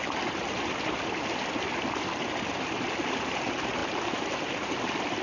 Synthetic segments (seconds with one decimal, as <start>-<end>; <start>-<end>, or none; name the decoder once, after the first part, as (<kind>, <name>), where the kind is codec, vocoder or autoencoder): none